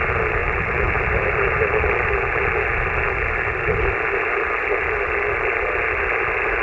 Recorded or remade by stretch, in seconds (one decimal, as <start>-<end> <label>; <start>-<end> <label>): 0.0-0.4 recorded; 0.4-2.1 remade; 2.1-6.6 recorded